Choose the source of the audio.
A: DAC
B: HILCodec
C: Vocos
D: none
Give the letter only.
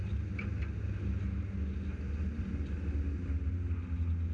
D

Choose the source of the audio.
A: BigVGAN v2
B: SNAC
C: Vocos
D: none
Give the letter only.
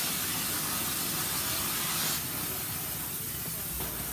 D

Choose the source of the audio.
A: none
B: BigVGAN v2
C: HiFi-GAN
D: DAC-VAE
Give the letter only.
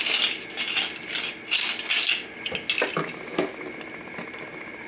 A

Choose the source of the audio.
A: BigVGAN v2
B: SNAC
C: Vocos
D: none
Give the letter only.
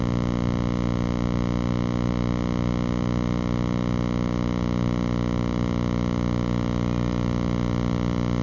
D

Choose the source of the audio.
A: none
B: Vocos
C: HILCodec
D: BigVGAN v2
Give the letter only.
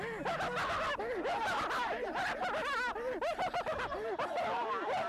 A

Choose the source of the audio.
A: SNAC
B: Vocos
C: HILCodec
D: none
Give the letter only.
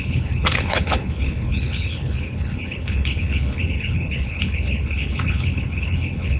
C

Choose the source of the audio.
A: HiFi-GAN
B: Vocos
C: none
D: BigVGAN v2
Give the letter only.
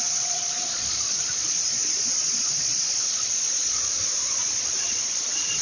B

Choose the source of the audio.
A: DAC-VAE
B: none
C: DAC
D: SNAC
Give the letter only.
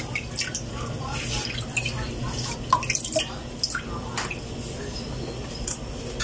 B